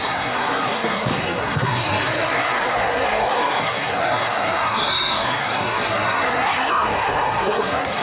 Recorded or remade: remade